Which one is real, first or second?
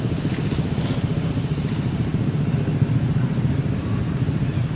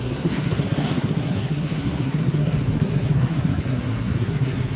first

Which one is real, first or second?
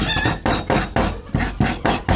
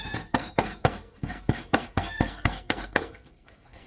first